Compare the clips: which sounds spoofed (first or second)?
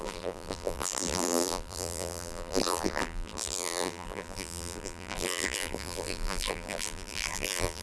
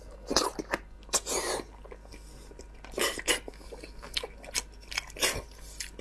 first